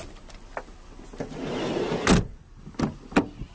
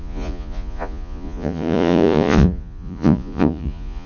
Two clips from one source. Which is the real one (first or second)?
first